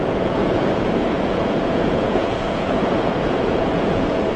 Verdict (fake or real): fake